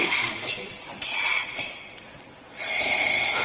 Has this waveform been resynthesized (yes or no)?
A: yes